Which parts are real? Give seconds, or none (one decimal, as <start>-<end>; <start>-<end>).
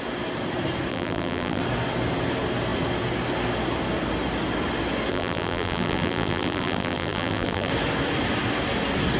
0.0-0.9; 1.6-5.1; 7.7-9.2